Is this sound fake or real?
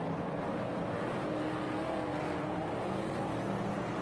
real